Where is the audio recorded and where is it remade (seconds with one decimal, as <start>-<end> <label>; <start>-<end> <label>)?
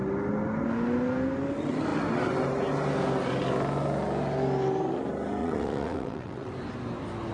0.0-5.4 recorded; 5.4-6.5 remade; 6.5-7.3 recorded